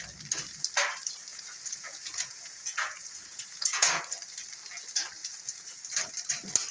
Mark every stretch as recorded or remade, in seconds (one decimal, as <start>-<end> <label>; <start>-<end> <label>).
0.0-1.3 recorded; 1.3-4.0 remade; 4.0-5.2 recorded; 5.2-5.8 remade; 5.8-6.7 recorded